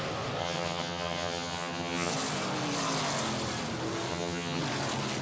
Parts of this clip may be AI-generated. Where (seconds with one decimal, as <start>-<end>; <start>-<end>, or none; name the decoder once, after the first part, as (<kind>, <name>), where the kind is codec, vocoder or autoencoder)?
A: 0.4-2.1 (vocoder, HiFi-GAN); 4.1-4.6